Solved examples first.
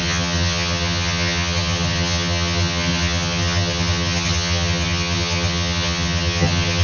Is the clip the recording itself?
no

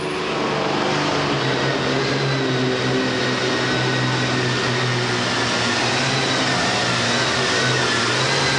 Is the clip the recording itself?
yes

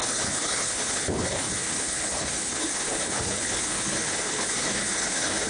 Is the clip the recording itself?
no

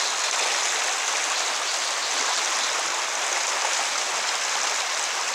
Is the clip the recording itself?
yes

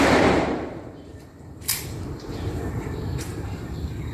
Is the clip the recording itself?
no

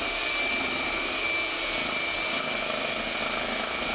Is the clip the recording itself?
yes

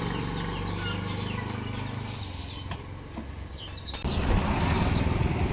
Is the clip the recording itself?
yes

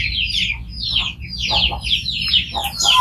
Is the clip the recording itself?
yes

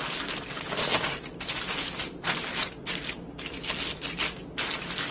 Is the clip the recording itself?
yes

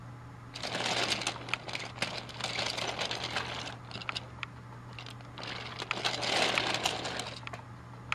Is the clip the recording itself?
yes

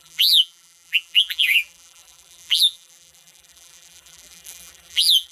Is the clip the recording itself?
no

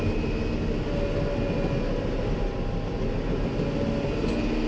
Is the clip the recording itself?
yes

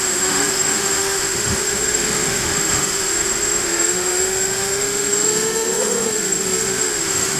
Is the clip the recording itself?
no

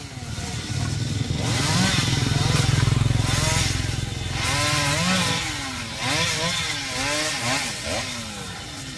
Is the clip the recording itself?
yes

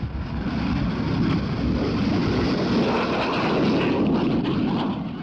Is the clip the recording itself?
yes